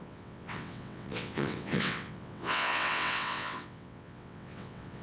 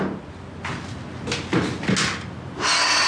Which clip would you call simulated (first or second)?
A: first